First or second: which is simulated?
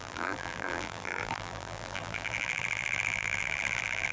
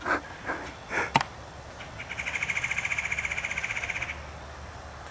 first